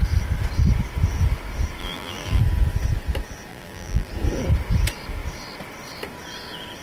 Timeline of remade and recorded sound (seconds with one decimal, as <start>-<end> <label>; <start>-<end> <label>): 0.0-1.8 recorded; 1.8-2.4 remade; 2.4-3.5 recorded; 3.5-4.1 remade; 4.1-6.8 recorded